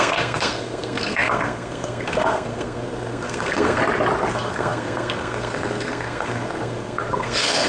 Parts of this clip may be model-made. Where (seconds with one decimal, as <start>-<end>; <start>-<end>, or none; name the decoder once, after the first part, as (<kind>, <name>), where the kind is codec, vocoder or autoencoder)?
0.0-3.8 (codec, SNAC); 4.3-7.7